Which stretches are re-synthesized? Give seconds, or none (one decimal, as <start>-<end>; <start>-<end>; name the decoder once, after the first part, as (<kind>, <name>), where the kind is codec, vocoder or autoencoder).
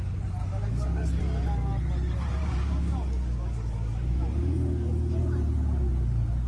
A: 0.4-1.2 (codec, DAC); 2.4-5.2